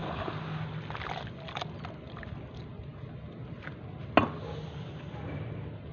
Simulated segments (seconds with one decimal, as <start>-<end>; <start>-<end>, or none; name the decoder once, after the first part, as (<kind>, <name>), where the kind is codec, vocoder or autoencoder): none